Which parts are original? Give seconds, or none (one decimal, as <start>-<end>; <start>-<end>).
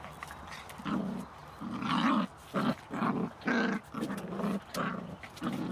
0.0-5.7